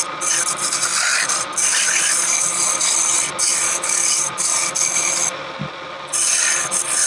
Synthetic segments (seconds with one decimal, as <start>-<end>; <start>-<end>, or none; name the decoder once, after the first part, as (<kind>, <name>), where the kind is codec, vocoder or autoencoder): 0.9-2.5 (vocoder, BigVGAN v2); 3.5-5.0